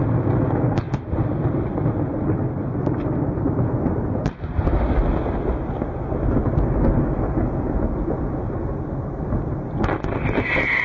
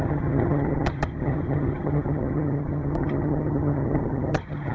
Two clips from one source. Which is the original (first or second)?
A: first